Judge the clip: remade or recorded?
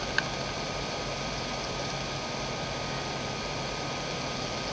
recorded